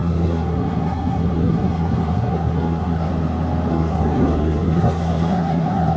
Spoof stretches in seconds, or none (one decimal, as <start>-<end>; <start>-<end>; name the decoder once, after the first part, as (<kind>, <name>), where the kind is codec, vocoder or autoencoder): 0.0-3.1 (codec, SNAC); 3.7-6.0

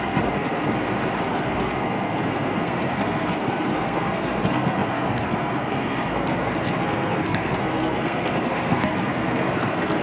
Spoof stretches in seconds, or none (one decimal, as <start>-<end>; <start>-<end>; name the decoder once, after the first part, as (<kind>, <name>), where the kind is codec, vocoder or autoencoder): 0.0-0.7 (codec, SNAC); 1.3-10.0

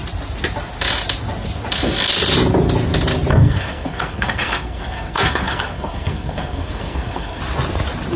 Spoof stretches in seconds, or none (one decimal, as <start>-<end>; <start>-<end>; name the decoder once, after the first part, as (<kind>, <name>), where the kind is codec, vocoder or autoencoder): 3.3-7.4 (codec, SNAC)

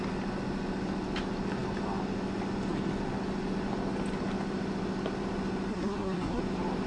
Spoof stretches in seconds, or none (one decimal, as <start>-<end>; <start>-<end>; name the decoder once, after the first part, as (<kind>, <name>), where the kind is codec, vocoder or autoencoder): 5.7-6.4 (codec, SNAC)

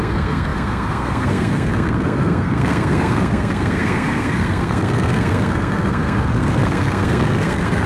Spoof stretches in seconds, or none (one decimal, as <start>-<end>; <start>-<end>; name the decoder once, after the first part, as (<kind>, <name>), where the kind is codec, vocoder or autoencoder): 0.0-7.9 (codec, SNAC)

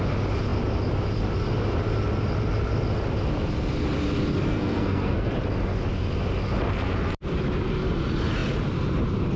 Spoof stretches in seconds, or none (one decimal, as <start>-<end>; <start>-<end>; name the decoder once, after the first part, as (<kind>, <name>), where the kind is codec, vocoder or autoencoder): 4.5-5.3 (codec, SNAC)

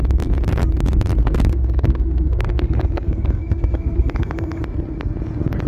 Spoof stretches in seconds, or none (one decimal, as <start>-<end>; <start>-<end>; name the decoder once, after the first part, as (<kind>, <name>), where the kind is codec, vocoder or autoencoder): 1.2-4.6 (codec, SNAC)

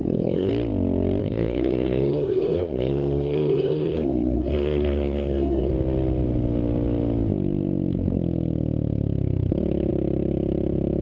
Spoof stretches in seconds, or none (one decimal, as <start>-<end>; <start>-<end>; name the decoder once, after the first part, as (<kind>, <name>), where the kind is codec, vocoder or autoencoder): 0.0-0.5 (codec, SNAC); 1.2-5.7